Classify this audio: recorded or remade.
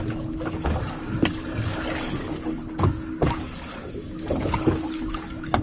remade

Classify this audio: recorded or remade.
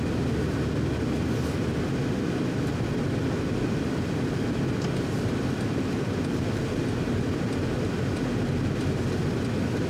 recorded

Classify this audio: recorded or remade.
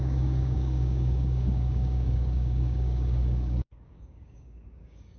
remade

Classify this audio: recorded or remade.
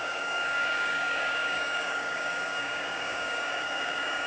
remade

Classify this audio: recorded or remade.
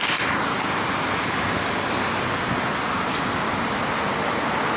recorded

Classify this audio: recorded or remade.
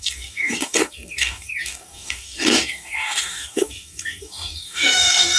remade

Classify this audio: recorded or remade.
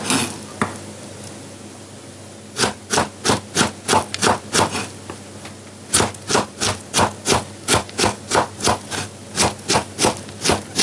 recorded